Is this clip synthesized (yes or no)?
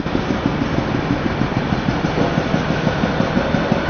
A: no